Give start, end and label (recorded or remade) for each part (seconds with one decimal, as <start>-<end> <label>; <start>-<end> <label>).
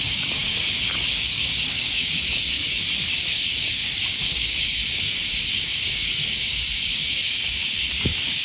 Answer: 0.0-2.7 remade; 2.7-3.3 recorded; 3.3-8.4 remade